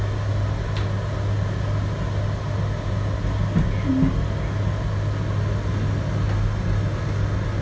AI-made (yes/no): no